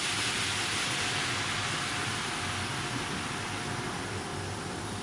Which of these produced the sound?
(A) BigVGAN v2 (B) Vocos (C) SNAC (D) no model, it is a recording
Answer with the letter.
D